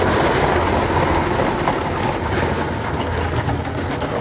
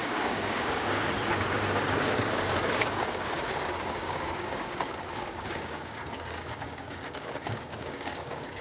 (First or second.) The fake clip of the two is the second